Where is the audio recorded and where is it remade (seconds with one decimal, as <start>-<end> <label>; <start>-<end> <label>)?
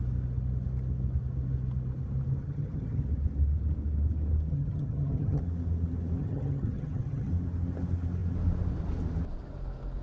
0.0-2.4 recorded; 2.4-3.0 remade; 3.0-4.5 recorded; 4.5-5.4 remade; 5.4-6.2 recorded; 6.2-7.3 remade; 7.3-10.0 recorded